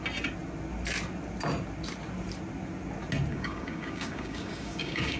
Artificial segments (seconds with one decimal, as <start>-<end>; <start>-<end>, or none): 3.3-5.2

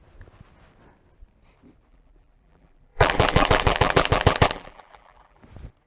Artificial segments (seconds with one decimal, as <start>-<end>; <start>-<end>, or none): 1.9-5.4

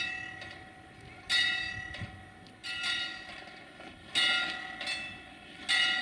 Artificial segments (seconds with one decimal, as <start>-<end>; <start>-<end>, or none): none

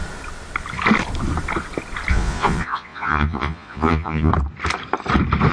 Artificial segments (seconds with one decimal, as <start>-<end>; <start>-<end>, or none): 2.1-4.3

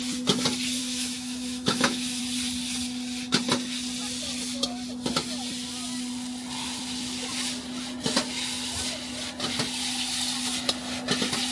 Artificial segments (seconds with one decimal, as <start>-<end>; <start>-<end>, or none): 0.8-2.2

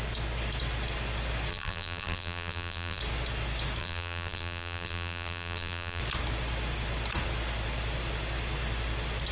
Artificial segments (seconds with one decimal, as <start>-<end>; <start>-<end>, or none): 1.5-3.0; 3.8-6.0

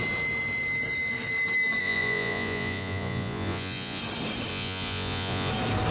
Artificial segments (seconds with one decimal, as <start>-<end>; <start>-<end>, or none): 1.8-4.0; 4.5-5.5